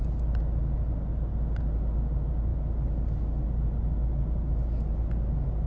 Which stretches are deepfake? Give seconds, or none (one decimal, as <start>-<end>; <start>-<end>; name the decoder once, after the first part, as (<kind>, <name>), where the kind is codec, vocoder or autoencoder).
none